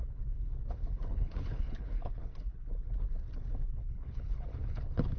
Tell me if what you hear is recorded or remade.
remade